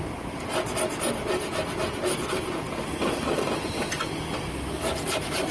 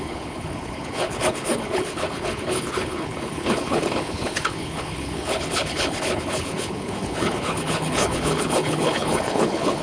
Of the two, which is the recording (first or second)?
first